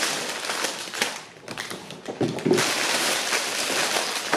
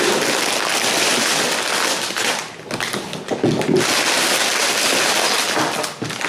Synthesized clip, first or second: first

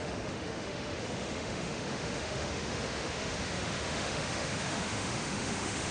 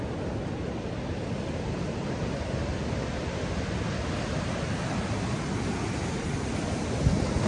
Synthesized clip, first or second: first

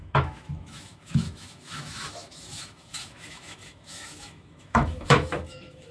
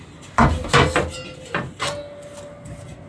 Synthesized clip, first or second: first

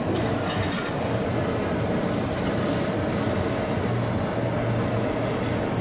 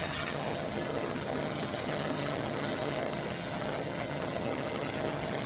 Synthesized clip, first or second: second